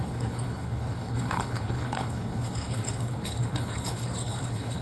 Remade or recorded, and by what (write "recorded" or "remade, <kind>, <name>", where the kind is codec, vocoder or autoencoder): remade, codec, HILCodec